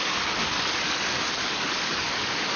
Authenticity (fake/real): fake